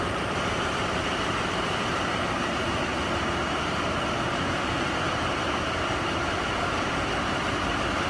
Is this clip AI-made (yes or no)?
yes